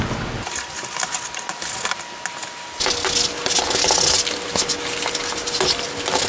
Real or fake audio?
real